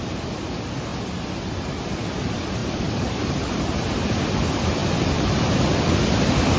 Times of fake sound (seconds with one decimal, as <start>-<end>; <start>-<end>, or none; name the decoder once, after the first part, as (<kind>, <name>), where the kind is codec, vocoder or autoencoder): 0.9-1.8 (vocoder, BigVGAN v2); 2.6-4.1; 4.8-5.5